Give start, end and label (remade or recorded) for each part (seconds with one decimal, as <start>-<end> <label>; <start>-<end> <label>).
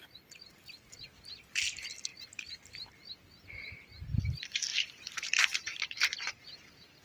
0.0-4.7 recorded; 4.7-6.4 remade; 6.4-7.0 recorded